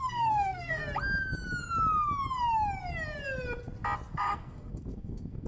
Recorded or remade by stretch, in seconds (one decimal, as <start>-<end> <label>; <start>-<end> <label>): 0.0-0.8 remade; 0.8-4.1 recorded; 4.1-5.5 remade